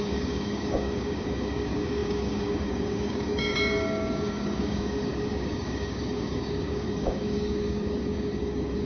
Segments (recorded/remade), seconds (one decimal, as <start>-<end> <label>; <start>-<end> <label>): 0.0-8.8 remade